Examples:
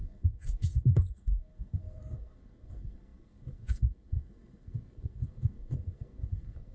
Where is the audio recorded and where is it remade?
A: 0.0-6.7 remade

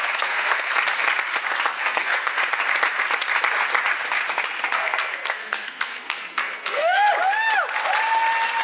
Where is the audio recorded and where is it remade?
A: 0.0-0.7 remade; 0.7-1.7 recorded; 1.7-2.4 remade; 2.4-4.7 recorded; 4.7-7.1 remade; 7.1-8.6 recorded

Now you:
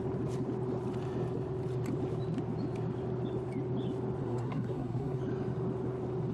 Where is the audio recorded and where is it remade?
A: 0.0-4.2 recorded; 4.2-5.2 remade; 5.2-6.3 recorded